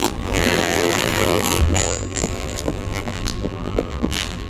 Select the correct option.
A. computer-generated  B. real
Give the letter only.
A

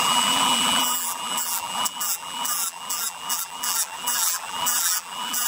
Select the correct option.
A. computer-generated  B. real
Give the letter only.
A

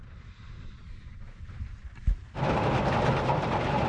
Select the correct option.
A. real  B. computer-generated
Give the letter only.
B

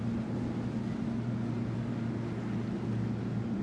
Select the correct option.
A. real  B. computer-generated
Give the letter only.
A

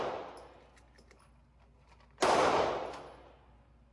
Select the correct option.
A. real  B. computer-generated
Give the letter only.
A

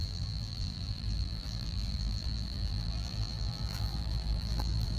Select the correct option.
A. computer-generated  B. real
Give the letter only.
A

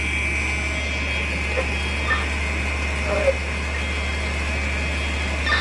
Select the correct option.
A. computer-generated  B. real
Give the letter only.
B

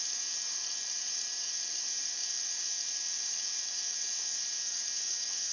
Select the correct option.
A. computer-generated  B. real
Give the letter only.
A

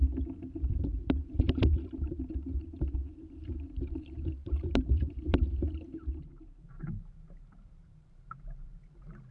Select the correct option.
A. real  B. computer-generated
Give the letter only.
B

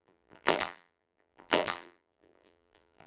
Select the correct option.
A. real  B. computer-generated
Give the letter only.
B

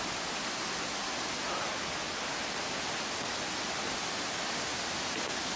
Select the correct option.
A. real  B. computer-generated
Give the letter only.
A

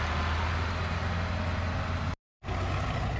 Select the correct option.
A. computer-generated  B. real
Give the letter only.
B